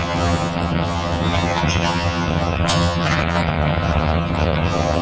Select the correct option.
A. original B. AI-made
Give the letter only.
B